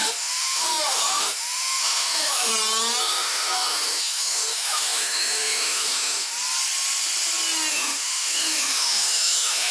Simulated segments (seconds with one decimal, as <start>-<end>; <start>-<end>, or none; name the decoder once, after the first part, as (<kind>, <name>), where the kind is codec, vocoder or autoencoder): 0.0-2.5 (autoencoder, DAC-VAE); 3.0-6.3; 7.7-9.7